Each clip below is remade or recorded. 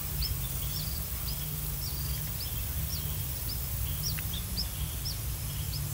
recorded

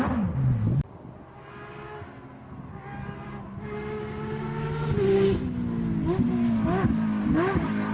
recorded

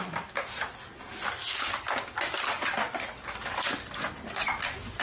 recorded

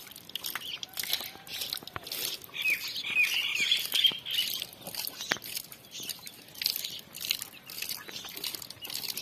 recorded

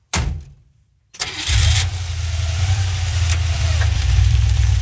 remade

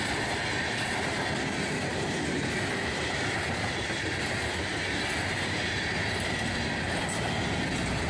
recorded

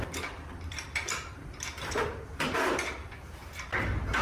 remade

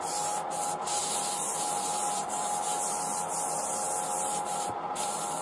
remade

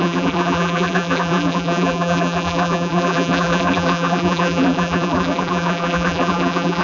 remade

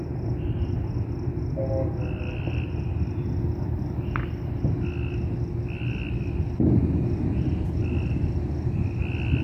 recorded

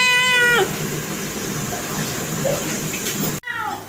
recorded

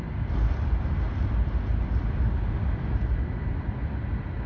recorded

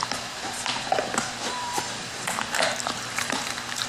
remade